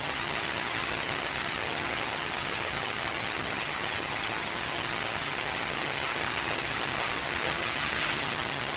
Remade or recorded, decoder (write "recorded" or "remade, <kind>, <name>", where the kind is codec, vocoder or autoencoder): remade, vocoder, HiFi-GAN